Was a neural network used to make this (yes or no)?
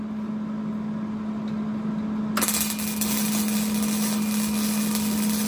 no